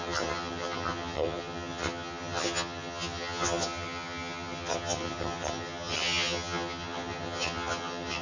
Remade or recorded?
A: remade